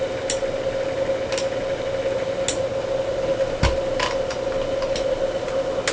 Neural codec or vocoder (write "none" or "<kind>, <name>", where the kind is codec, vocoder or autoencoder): none